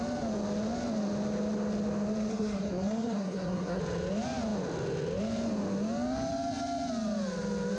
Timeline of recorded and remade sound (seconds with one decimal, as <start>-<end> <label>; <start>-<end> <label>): 0.0-2.3 recorded; 2.3-3.8 remade; 3.8-7.8 recorded